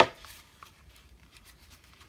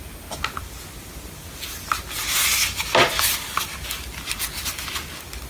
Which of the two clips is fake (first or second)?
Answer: first